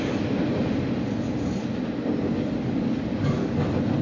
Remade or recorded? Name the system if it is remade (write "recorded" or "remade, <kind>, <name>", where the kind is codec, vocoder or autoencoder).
recorded